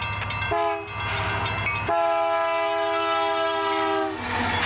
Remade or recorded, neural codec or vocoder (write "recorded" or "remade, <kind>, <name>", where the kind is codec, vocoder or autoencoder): recorded